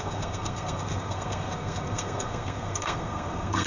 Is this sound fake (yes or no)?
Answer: yes